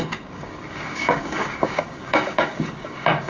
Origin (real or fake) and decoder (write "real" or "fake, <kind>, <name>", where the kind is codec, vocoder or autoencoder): fake, codec, DAC